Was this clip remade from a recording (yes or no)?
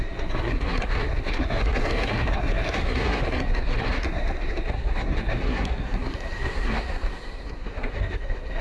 yes